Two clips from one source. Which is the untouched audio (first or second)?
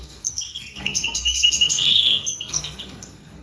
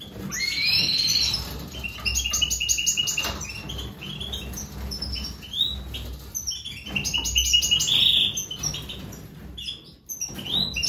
second